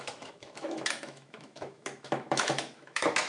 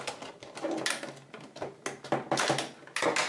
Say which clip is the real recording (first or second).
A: second